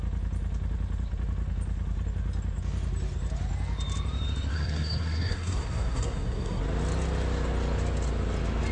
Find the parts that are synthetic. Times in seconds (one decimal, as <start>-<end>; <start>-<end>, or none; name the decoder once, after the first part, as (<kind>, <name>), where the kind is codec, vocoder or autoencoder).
4.5-6.6 (codec, SNAC)